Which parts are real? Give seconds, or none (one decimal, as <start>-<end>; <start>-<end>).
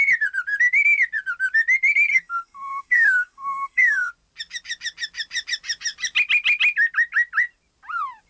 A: 0.0-2.1; 4.1-8.3